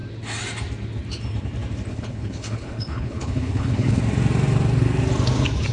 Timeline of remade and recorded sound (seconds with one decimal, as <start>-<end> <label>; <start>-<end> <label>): 0.0-1.9 recorded; 1.9-4.0 remade; 4.0-5.7 recorded